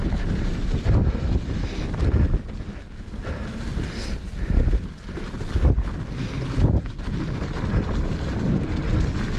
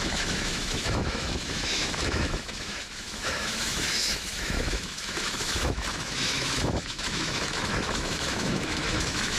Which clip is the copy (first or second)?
second